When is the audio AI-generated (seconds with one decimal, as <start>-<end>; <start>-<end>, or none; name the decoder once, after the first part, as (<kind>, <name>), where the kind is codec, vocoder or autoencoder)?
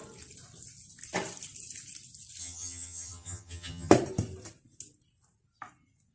2.4-3.9 (vocoder, HiFi-GAN)